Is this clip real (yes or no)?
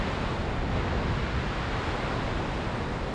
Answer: yes